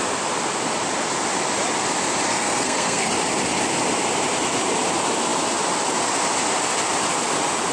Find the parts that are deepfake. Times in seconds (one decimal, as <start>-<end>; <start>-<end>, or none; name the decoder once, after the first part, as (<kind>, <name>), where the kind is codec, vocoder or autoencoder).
2.3-3.1 (codec, SNAC)